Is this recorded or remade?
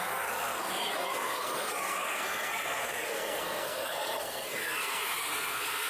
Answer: remade